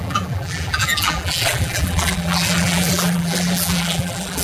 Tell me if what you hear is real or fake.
fake